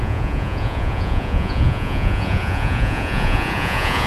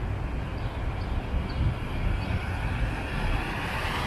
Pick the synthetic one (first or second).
first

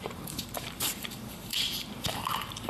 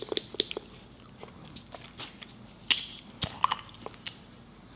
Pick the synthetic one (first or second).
first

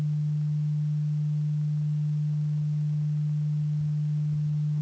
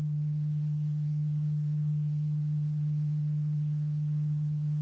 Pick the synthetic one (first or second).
second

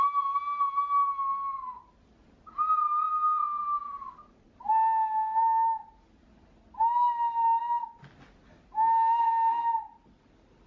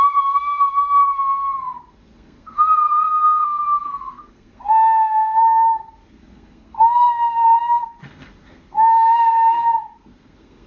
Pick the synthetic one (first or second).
second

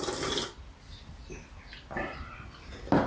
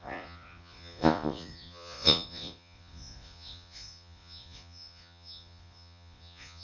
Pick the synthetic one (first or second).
second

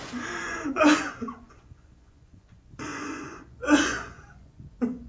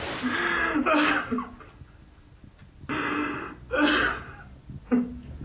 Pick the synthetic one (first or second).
first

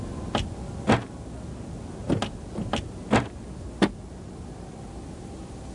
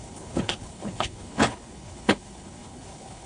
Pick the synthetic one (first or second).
second